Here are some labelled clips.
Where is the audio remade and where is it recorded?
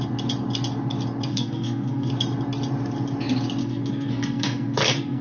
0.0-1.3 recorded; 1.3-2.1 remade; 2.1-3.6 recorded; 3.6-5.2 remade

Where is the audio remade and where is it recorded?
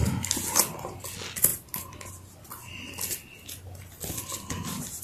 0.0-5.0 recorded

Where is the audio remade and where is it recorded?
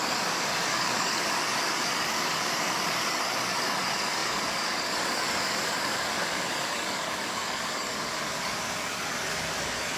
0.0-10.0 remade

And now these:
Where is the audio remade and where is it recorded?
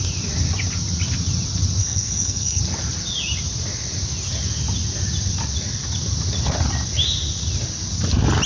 0.0-1.8 recorded; 1.8-2.6 remade; 2.6-8.5 recorded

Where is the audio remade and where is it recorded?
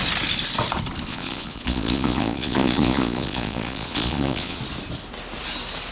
0.0-1.1 recorded; 1.1-4.6 remade; 4.6-5.9 recorded